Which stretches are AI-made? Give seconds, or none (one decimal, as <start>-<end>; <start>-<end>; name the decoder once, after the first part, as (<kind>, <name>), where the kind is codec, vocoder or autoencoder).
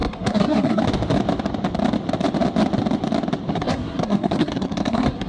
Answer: 0.0-0.8 (codec, SNAC); 3.5-5.3